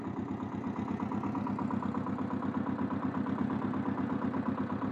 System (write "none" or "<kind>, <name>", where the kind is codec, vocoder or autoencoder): none